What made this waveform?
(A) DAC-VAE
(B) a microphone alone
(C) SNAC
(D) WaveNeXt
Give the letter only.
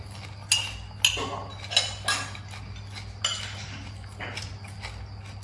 B